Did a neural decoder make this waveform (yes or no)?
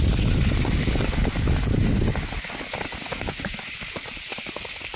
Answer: no